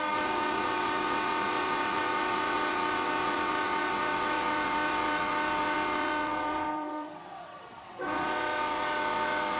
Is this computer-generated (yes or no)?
yes